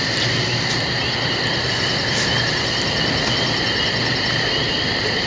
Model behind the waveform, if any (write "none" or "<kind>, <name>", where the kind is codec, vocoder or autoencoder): none